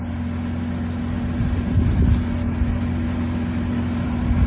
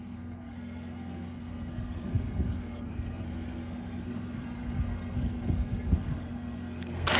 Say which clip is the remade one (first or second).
second